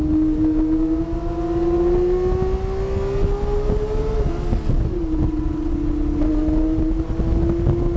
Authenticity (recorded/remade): recorded